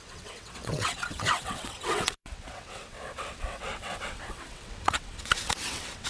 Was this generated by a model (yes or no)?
yes